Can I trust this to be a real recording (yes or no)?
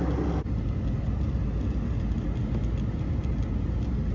yes